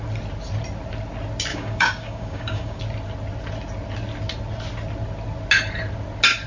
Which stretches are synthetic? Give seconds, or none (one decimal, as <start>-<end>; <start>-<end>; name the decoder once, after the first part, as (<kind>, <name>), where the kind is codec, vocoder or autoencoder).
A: 1.5-2.8 (codec, DAC)